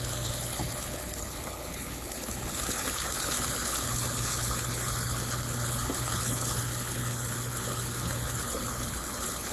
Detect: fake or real fake